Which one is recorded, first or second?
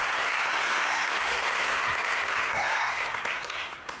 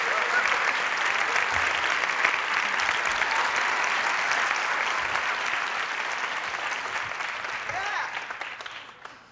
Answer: second